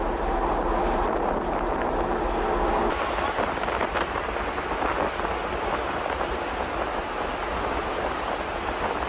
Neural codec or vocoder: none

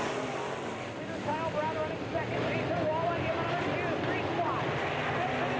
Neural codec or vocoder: none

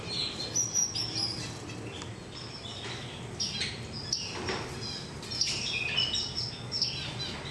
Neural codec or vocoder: none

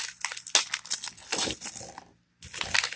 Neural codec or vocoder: none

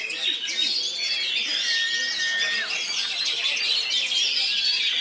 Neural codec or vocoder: none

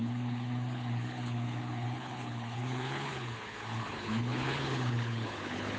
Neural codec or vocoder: codec, HILCodec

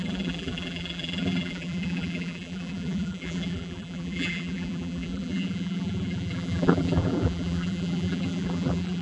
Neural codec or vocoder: vocoder, BigVGAN v2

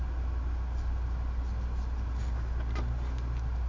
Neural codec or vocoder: none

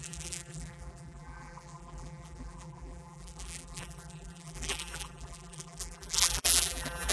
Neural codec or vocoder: vocoder, BigVGAN v2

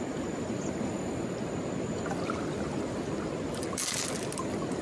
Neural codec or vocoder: none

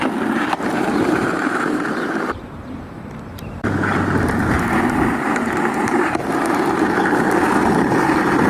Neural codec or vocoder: vocoder, BigVGAN v2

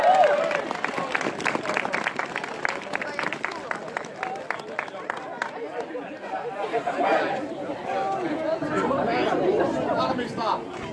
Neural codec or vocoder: none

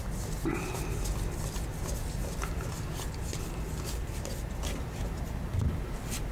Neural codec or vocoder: none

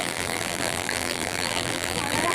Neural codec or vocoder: vocoder, BigVGAN v2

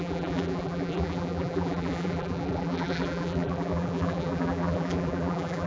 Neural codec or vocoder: vocoder, BigVGAN v2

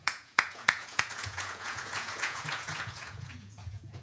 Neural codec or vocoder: vocoder, Vocos